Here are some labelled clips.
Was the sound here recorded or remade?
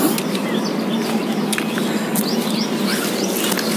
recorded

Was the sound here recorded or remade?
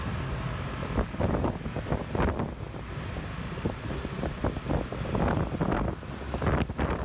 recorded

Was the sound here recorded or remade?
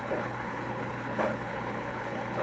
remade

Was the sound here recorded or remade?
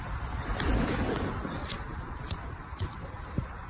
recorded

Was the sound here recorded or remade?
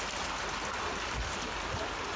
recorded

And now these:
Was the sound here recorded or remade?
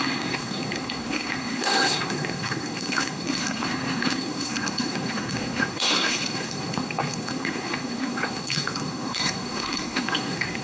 remade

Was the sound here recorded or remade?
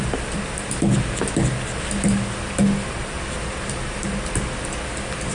recorded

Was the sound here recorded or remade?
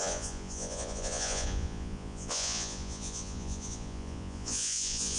remade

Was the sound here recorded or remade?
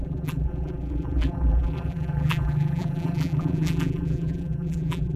remade